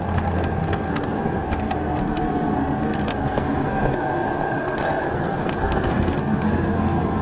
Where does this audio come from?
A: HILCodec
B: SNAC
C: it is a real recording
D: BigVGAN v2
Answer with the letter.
B